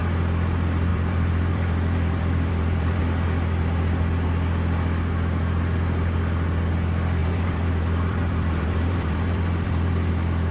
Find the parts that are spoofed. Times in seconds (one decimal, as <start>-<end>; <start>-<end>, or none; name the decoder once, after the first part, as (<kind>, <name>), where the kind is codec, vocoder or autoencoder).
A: 0.9-3.0 (vocoder, BigVGAN v2); 7.2-10.1